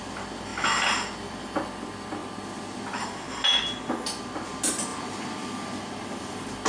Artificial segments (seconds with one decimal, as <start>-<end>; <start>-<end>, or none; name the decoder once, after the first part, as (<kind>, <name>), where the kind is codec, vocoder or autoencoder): none